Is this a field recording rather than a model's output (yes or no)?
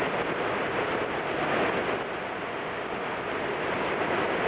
yes